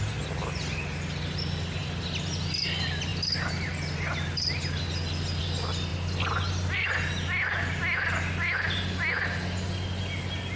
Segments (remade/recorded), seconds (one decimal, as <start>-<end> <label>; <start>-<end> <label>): 0.0-10.6 recorded